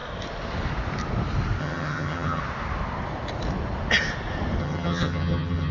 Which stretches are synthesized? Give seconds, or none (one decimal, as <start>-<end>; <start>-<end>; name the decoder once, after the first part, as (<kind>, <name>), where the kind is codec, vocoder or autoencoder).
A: 1.6-2.4 (vocoder, HiFi-GAN); 4.6-5.7